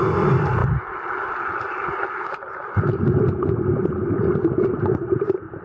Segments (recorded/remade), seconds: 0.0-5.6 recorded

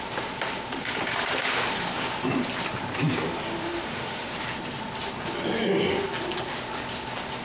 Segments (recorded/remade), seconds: 0.0-3.6 recorded; 3.6-4.3 remade; 4.3-7.4 recorded

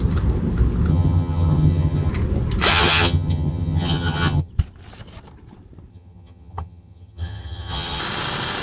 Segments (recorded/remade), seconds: 0.0-0.9 recorded; 0.9-2.1 remade; 2.1-2.7 recorded; 2.7-4.5 remade; 4.5-5.9 recorded; 5.9-8.0 remade; 8.0-8.6 recorded

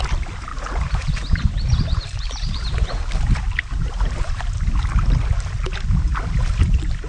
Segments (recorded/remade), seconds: 0.0-0.5 recorded; 0.5-4.4 remade; 4.4-7.1 recorded